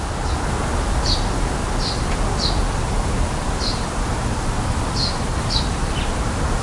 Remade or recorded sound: recorded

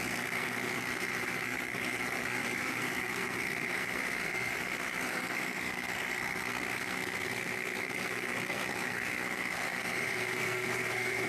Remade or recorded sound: remade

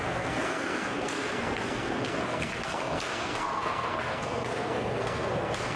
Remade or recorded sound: remade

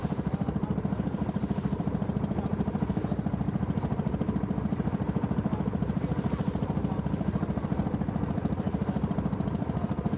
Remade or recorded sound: recorded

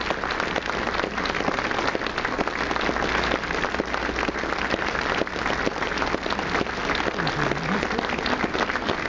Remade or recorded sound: recorded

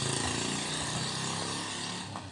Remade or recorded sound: recorded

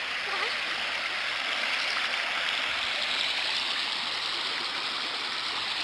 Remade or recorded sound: recorded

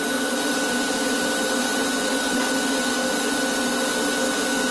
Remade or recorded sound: recorded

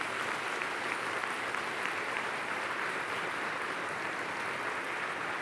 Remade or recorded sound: recorded